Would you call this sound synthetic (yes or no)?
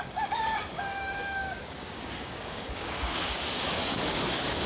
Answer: yes